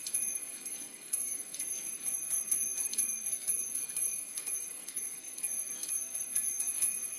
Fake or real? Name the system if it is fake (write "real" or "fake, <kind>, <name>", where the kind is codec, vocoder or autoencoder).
fake, codec, SNAC